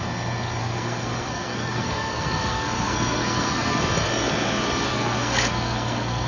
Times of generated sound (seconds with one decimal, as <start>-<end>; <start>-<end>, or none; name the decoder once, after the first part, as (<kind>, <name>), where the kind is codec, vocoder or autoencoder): 0.6-3.8 (codec, SNAC); 4.9-6.3